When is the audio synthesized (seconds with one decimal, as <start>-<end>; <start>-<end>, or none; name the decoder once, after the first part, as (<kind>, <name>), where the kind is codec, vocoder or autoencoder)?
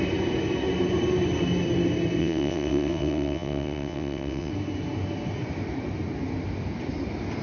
2.2-4.5 (vocoder, WaveNeXt)